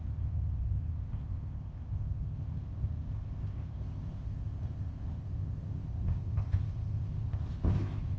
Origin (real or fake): fake